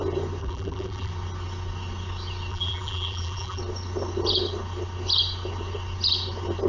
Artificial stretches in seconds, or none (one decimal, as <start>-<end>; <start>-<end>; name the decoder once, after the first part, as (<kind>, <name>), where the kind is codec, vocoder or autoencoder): 0.4-1.1 (vocoder, BigVGAN v2); 2.5-3.6